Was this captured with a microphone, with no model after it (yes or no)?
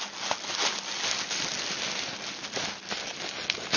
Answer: yes